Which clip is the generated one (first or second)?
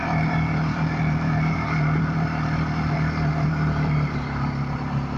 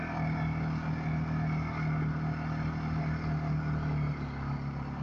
first